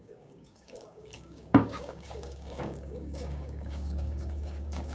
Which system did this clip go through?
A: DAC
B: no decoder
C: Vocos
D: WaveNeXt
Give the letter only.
A